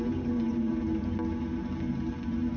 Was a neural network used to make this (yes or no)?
no